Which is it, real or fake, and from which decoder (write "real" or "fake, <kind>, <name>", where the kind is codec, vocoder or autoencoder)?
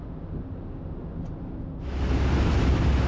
real